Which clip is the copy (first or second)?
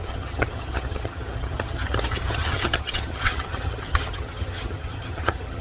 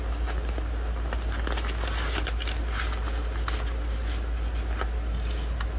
first